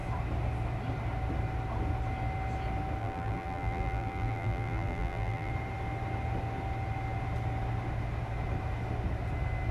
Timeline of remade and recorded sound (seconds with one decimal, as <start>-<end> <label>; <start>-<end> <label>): 0.0-3.0 recorded; 3.0-5.5 remade; 5.5-9.7 recorded